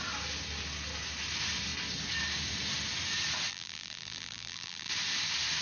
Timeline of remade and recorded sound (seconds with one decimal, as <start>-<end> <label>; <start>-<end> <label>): 0.0-3.5 recorded; 3.5-4.9 remade; 4.9-5.6 recorded